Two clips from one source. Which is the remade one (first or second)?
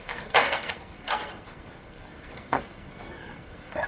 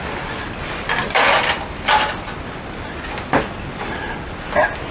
first